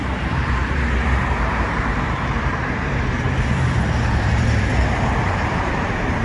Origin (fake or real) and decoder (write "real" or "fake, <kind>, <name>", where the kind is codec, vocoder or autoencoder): fake, vocoder, BigVGAN v2